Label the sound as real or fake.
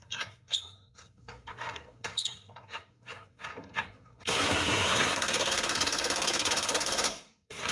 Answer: fake